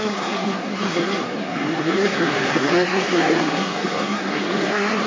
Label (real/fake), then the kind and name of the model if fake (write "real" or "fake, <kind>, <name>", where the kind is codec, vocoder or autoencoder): fake, codec, SNAC